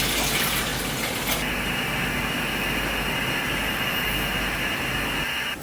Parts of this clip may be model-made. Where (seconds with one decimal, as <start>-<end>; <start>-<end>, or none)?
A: none